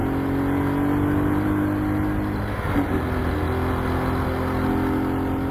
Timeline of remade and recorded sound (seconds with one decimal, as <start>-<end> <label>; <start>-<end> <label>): 0.0-5.5 recorded